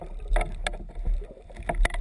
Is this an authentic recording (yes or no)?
yes